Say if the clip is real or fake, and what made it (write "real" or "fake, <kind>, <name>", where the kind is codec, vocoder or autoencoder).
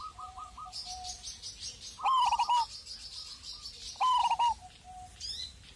real